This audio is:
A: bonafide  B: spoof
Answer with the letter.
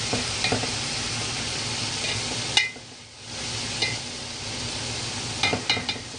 A